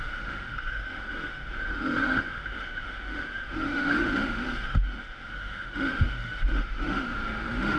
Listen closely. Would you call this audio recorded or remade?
remade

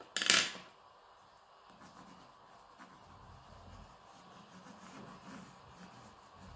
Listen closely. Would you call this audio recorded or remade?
recorded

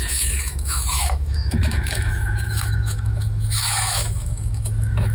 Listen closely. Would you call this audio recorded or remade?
remade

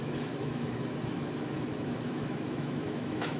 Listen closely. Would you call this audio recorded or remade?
remade